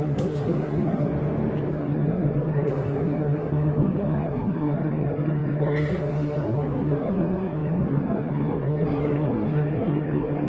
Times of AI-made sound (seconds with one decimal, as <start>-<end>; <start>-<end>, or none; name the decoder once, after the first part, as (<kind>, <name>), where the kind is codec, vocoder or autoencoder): 0.0-1.1 (codec, SNAC); 1.7-10.5